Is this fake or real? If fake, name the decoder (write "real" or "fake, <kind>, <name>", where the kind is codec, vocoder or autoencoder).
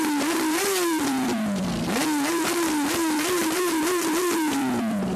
fake, vocoder, BigVGAN v2